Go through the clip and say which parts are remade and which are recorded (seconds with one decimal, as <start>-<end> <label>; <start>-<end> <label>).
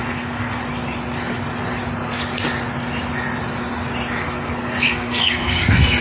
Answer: 0.0-0.6 remade; 0.6-4.2 recorded; 4.2-6.0 remade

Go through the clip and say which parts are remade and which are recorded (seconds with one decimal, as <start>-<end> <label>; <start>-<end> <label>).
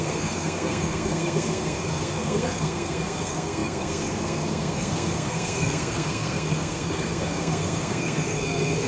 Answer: 0.0-8.9 remade